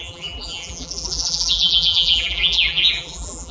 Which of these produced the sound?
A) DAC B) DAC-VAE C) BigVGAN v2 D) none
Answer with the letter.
C